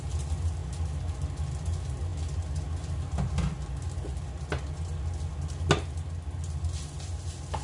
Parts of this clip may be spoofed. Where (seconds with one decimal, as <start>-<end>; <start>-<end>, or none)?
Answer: none